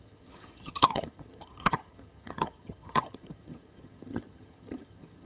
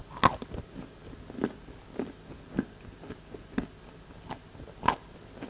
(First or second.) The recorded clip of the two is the second